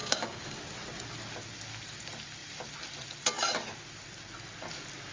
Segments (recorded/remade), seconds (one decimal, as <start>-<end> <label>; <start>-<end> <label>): 0.0-0.6 remade; 0.6-5.1 recorded